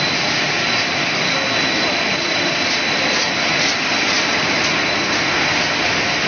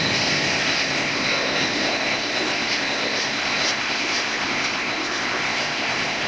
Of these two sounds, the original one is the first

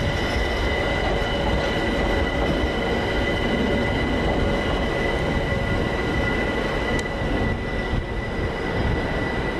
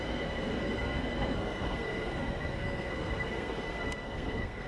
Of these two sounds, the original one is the first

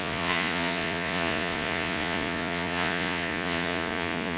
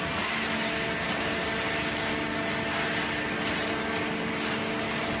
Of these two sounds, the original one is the second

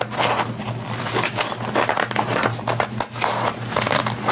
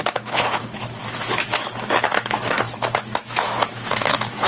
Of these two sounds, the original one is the first